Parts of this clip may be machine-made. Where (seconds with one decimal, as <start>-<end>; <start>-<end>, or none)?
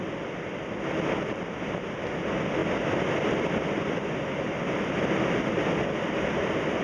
none